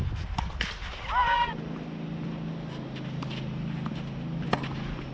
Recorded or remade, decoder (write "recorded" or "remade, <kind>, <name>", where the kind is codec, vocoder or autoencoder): recorded